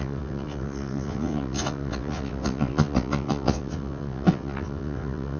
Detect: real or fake fake